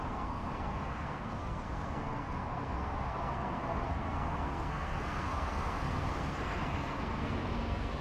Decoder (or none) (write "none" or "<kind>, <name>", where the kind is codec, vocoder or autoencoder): codec, SNAC